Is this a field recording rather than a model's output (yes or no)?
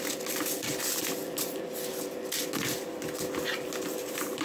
yes